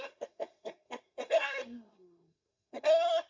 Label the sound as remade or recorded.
remade